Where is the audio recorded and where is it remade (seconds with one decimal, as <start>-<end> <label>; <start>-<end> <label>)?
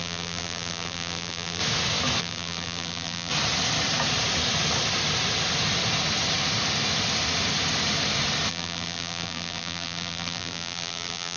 0.0-1.6 remade; 1.6-2.2 recorded; 2.2-3.3 remade; 3.3-8.5 recorded; 8.5-11.4 remade